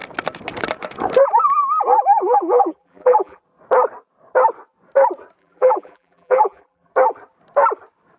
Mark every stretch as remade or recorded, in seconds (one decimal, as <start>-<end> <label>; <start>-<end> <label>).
0.0-2.2 recorded; 2.2-3.4 remade; 3.4-5.4 recorded; 5.4-6.9 remade; 6.9-8.2 recorded